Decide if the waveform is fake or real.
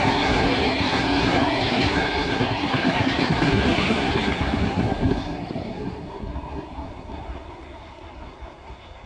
fake